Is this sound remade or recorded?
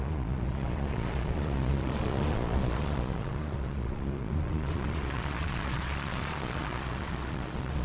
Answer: remade